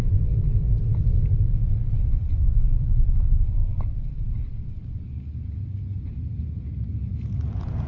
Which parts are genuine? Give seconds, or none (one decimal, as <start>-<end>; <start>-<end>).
0.0-7.9